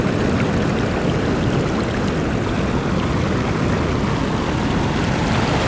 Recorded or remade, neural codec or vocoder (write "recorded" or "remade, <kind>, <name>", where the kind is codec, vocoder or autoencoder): recorded